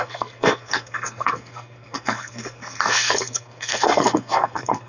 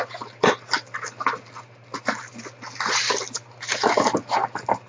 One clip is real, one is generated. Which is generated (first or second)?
first